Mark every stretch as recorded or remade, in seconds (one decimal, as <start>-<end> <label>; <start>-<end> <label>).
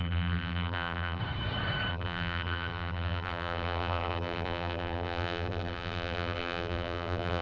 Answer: 0.0-1.2 remade; 1.2-1.9 recorded; 1.9-7.4 remade